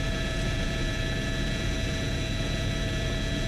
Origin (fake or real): fake